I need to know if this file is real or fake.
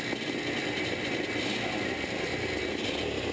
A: real